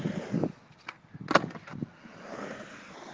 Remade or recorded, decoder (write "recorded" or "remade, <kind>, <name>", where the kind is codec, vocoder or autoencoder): recorded